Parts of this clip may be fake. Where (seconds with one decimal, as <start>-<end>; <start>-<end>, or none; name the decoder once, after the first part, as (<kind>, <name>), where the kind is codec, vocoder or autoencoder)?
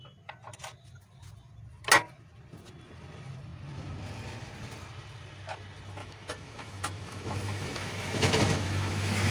6.0-9.3 (autoencoder, DAC-VAE)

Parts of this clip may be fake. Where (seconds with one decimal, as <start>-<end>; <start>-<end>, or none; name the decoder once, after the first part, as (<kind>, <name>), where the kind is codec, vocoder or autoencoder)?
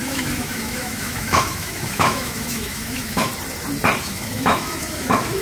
0.0-3.3 (autoencoder, DAC-VAE); 4.0-5.4